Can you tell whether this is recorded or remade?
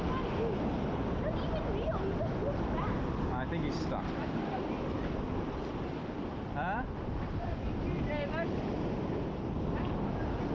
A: recorded